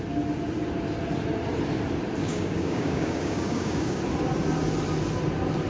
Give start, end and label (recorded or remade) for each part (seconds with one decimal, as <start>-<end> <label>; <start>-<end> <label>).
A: 0.0-2.2 recorded; 2.2-4.0 remade; 4.0-5.7 recorded